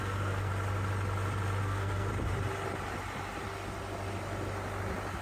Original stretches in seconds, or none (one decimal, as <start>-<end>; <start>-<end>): 0.5-1.6; 2.1-5.2